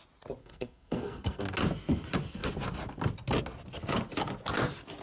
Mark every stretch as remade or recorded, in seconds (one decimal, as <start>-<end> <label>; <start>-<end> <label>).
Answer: 0.0-0.4 recorded; 0.4-1.4 remade; 1.4-5.0 recorded